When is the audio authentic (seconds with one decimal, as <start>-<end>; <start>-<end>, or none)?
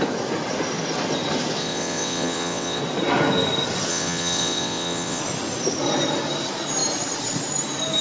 0.0-1.6; 2.8-3.9; 5.2-8.0